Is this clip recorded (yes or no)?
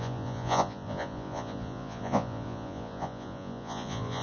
no